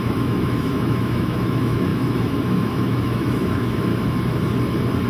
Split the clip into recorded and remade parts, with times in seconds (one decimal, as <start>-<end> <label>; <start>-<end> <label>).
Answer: 0.0-3.9 remade; 3.9-5.1 recorded